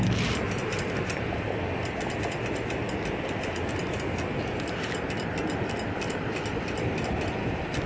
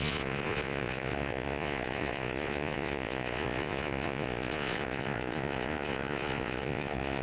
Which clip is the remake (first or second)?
second